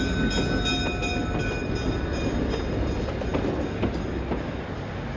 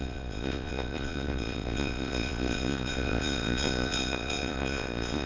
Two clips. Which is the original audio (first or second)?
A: first